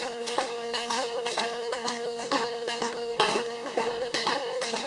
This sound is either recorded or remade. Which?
remade